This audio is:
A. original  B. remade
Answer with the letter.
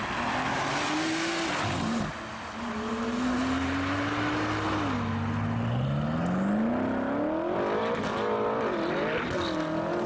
A